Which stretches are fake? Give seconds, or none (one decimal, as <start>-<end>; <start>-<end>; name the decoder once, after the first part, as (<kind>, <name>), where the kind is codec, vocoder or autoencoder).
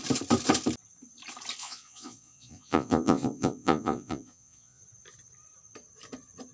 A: 1.6-4.8 (vocoder, Vocos)